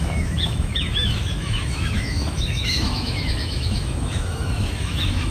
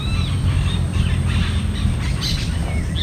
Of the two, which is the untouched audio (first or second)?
second